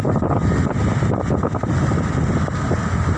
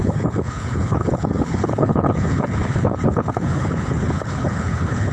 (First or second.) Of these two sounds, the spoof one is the second